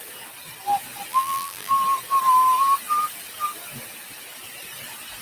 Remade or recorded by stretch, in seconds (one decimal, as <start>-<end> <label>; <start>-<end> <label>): 0.0-1.1 recorded; 1.1-1.7 remade; 1.7-5.2 recorded